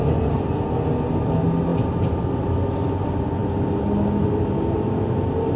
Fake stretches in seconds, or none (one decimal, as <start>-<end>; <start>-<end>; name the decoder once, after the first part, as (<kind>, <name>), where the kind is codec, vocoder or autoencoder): none